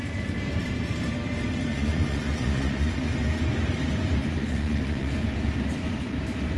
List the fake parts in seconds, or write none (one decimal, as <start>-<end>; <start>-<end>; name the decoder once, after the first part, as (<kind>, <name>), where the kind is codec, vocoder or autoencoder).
1.7-3.1 (vocoder, Vocos); 4.2-5.1